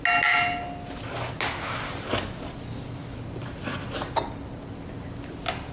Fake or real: real